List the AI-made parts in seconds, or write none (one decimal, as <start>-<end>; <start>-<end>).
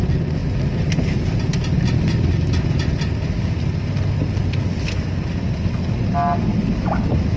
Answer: none